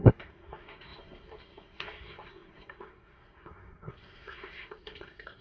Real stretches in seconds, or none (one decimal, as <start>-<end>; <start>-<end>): none